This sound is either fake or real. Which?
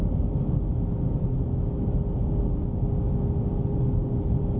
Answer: real